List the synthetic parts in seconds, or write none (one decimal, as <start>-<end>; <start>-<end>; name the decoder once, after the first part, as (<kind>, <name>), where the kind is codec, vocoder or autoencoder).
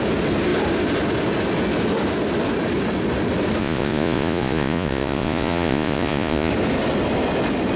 3.6-6.5 (vocoder, Vocos)